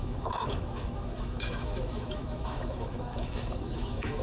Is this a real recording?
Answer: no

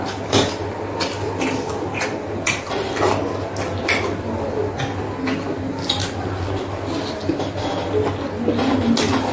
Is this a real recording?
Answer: yes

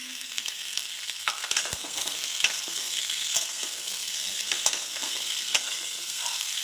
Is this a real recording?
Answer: no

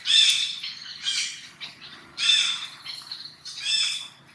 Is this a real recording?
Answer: no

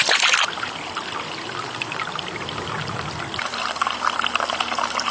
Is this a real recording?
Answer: no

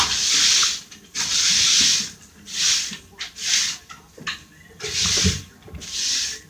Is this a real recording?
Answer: yes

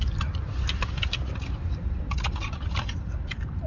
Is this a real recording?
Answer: yes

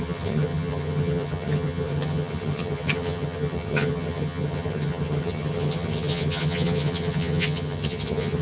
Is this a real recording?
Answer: no